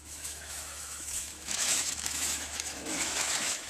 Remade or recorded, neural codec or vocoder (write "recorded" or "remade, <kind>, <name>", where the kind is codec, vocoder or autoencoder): remade, autoencoder, DAC-VAE